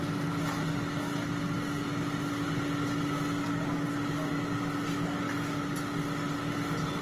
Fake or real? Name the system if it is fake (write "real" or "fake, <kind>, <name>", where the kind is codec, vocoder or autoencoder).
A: real